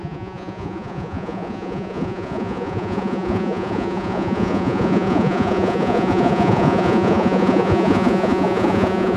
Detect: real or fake fake